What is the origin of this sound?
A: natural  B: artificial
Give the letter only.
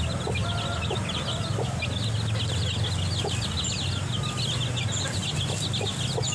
A